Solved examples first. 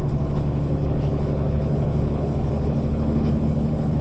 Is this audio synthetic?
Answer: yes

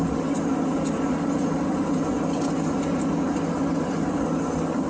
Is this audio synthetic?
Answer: no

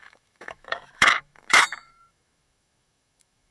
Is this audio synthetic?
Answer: yes